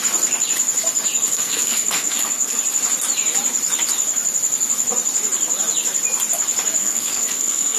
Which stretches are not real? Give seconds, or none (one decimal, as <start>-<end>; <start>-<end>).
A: 1.3-2.6; 6.8-7.8